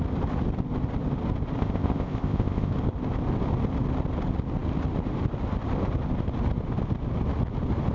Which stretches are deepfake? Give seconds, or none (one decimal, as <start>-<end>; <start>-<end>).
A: 1.6-2.7